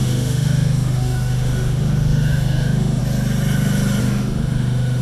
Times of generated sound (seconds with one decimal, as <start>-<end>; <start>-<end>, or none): 0.0-3.0; 4.0-5.0